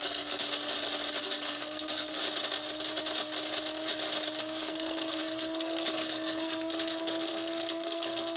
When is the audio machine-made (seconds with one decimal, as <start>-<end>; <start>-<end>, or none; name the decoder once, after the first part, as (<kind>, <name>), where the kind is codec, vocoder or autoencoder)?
0.0-0.4 (codec, SNAC); 1.2-2.2; 4.4-8.4

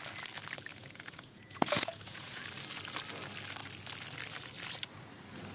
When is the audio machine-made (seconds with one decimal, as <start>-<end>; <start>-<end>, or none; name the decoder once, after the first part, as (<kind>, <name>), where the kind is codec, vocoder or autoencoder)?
0.7-2.4 (vocoder, Vocos)